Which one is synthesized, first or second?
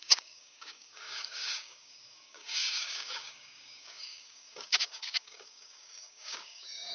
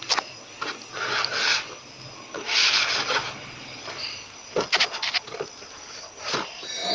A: first